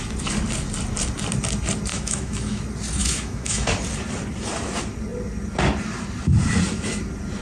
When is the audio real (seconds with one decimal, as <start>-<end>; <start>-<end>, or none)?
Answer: 0.0-1.9; 2.6-3.0; 3.7-7.4